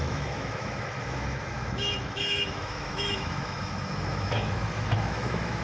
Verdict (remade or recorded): remade